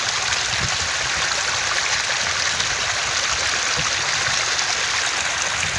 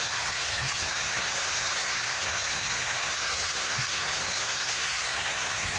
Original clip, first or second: first